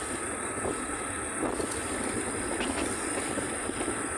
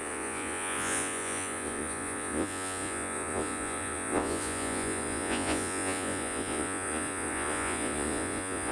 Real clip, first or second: first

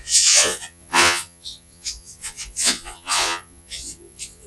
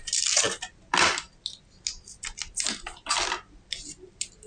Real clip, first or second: second